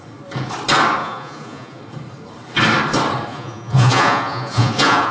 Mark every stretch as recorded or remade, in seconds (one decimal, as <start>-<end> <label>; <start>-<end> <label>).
0.0-1.0 recorded; 1.0-1.8 remade; 1.8-3.3 recorded; 3.3-5.1 remade